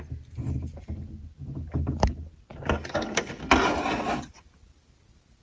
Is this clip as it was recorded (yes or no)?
yes